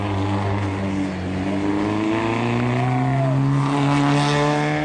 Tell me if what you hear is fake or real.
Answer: real